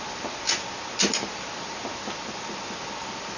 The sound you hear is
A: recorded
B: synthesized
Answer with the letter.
A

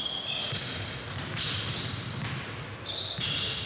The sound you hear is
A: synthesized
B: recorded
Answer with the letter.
B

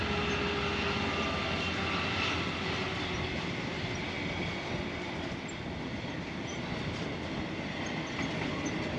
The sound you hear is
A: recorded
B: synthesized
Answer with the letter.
A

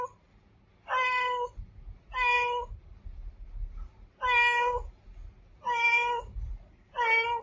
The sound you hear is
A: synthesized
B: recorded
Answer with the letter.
B